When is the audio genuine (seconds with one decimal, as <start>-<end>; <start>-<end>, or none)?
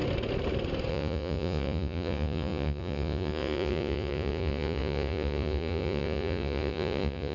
0.0-0.9